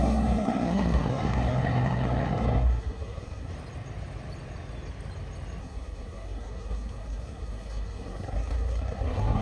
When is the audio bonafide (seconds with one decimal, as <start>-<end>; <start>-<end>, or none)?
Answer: 3.5-5.6